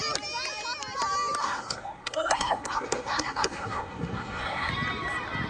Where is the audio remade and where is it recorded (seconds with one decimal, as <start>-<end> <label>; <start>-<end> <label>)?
0.0-1.4 recorded; 1.4-4.7 remade; 4.7-5.5 recorded